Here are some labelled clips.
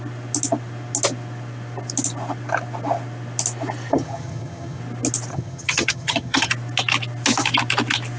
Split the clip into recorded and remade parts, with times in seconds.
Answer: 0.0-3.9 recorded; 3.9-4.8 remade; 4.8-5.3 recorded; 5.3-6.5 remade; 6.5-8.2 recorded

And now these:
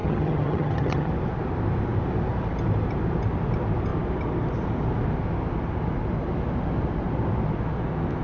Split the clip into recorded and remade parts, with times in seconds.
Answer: 0.0-1.1 remade; 1.1-8.2 recorded